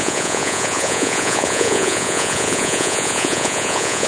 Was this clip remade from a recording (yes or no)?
yes